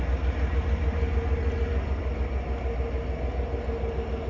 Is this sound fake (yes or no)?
no